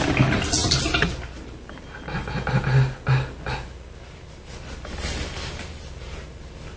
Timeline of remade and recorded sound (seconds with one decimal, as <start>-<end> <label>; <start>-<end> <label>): 0.0-6.8 recorded